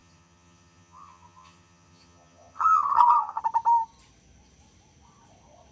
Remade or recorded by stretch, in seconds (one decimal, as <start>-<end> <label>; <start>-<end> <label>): 0.0-3.4 remade; 3.4-5.7 recorded